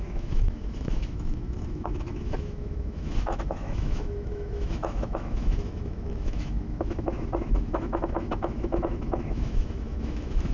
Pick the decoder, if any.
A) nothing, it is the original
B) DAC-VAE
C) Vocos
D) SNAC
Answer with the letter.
B